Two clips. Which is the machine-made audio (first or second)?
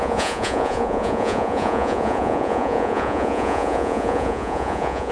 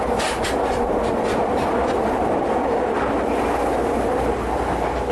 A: first